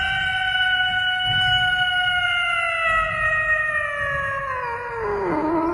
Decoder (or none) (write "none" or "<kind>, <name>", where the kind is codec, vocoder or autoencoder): none